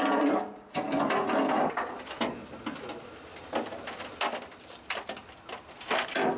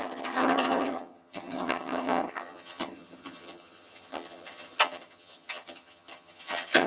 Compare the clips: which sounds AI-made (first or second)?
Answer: second